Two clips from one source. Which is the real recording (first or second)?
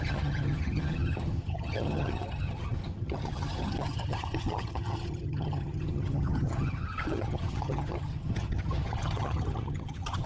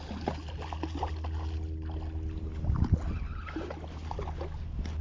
second